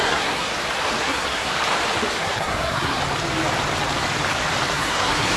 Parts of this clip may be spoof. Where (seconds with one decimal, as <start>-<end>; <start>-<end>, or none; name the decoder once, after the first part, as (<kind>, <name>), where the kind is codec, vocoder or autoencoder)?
0.0-0.5 (codec, SNAC); 1.0-1.5; 2.2-3.0; 4.7-5.4